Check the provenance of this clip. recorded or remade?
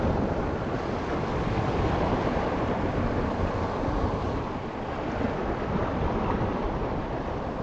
recorded